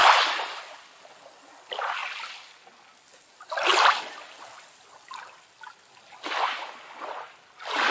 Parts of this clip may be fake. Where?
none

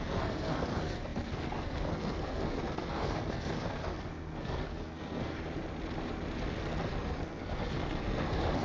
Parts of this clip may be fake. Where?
0.0-5.4; 6.6-8.6

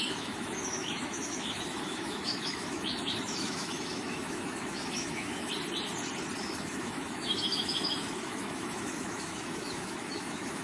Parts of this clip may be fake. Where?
0.0-5.5; 6.4-10.6

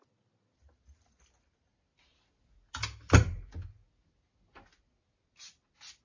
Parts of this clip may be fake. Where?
none

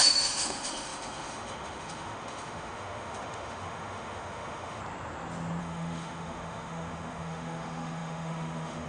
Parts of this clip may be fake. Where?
0.0-4.8; 5.6-8.9